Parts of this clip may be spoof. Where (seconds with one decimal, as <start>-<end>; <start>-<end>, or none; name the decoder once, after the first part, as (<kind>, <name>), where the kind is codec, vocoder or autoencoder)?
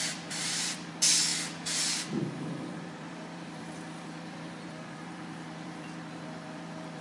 0.0-1.3 (vocoder, BigVGAN v2); 1.8-7.0